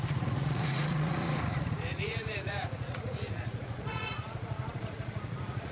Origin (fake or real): fake